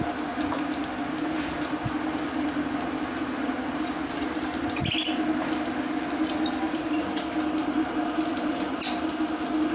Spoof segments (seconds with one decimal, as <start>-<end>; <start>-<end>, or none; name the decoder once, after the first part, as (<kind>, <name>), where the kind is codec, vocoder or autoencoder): 7.6-9.2 (vocoder, BigVGAN v2)